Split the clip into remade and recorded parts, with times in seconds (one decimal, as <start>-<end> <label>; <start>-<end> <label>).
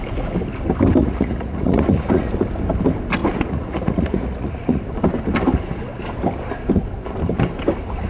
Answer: 0.0-1.0 recorded; 1.0-2.3 remade; 2.3-3.2 recorded; 3.2-4.8 remade; 4.8-8.1 recorded